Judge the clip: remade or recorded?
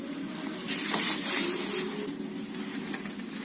recorded